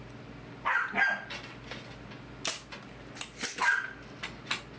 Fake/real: real